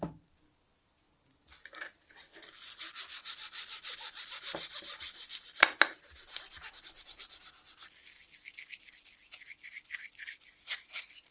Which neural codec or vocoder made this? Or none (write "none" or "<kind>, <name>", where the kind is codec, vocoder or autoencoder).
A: none